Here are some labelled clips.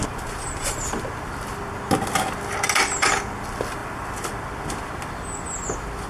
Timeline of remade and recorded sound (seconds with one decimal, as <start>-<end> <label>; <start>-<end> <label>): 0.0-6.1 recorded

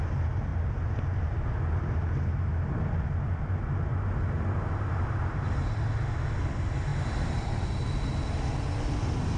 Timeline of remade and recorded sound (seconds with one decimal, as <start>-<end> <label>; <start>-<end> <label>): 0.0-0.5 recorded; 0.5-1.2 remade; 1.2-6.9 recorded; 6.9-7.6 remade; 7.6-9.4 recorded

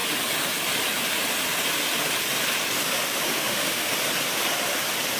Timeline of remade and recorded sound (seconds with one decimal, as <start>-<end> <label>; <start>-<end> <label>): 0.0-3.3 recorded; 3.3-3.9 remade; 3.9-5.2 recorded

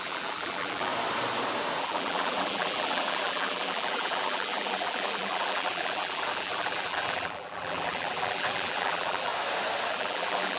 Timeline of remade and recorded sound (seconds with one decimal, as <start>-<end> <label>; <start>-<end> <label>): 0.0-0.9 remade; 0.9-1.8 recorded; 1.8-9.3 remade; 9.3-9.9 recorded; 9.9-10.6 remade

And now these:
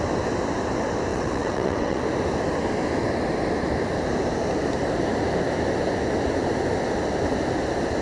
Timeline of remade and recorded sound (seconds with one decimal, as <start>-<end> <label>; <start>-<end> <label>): 0.0-1.1 recorded; 1.1-2.0 remade; 2.0-8.0 recorded

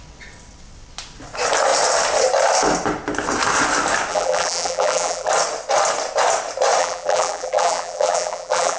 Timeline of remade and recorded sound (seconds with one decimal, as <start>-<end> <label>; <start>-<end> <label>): 0.0-4.1 recorded; 4.1-5.3 remade; 5.3-6.8 recorded; 6.8-8.8 remade